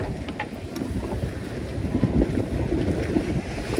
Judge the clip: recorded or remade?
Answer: recorded